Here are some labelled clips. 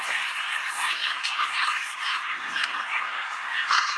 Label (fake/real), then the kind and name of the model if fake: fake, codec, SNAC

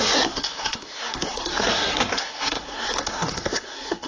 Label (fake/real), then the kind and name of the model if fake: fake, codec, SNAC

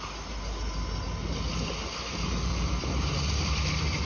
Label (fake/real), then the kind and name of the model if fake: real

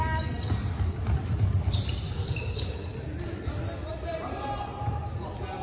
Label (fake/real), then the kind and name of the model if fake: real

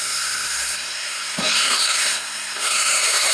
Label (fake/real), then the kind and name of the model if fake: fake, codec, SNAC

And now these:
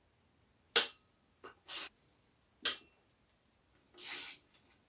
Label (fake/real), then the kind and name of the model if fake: real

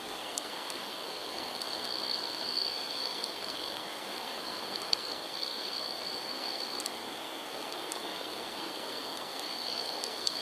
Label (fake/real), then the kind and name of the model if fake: fake, codec, SNAC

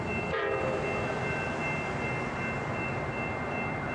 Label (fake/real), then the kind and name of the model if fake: real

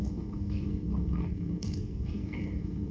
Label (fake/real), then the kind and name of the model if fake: fake, codec, SNAC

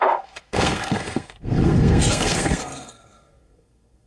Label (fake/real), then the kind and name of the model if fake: fake, codec, SNAC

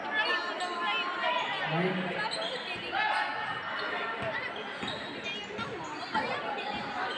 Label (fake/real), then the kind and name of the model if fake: real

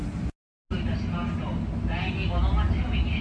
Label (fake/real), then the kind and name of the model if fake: real